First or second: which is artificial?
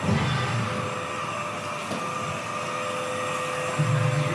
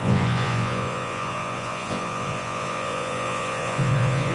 second